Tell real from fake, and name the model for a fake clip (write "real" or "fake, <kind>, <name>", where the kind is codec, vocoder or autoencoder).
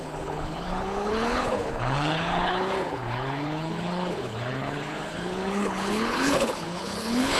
fake, codec, HILCodec